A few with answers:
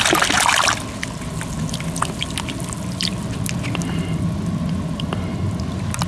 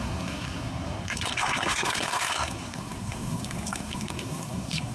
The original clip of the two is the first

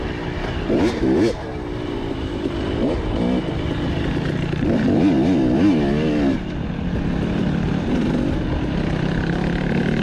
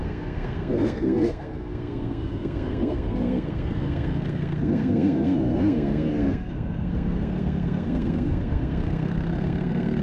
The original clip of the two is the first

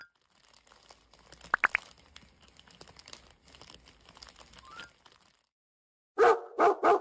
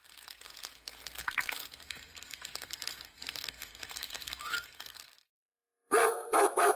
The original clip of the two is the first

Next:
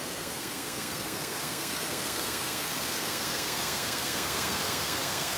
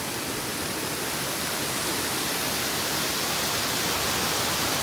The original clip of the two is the second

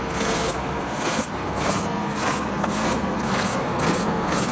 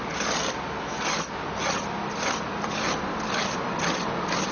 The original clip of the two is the second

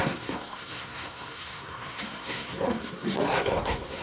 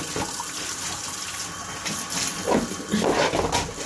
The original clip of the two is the second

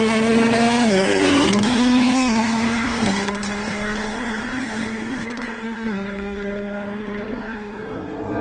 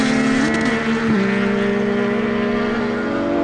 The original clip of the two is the second